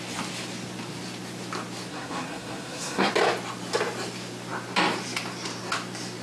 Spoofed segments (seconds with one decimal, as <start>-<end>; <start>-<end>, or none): 1.9-3.1

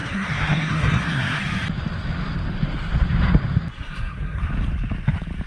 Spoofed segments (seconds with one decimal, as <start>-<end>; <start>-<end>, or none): 0.0-1.4; 3.7-4.4

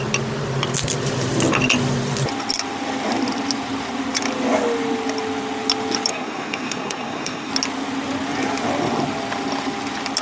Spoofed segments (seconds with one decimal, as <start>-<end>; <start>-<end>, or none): 6.1-7.5

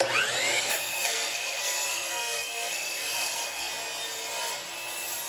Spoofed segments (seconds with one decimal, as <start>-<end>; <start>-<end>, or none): 0.5-3.7

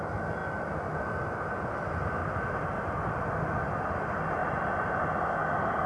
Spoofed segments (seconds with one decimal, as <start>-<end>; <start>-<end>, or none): none

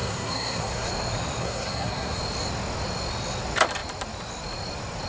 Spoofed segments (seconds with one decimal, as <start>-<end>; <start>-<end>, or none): 0.0-0.9; 1.4-2.2

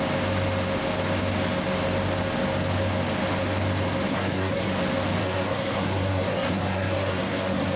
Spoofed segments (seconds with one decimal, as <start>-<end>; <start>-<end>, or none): 4.1-4.7; 5.2-7.8

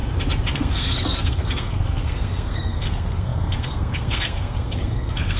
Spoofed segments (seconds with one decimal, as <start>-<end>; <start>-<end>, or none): 0.5-5.4